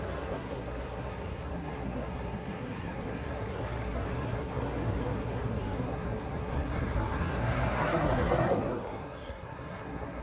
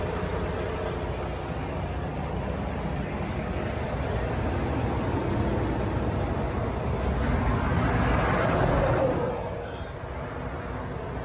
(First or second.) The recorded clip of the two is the second